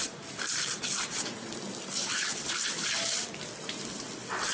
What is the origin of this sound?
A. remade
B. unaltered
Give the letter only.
A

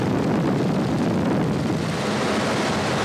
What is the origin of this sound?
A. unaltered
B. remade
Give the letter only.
A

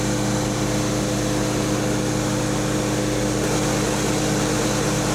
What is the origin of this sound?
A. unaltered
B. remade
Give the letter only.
A